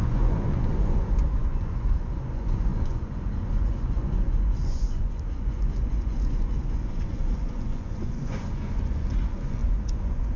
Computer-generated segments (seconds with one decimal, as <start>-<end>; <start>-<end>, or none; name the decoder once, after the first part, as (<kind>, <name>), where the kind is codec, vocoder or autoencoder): 0.0-10.4 (vocoder, Vocos)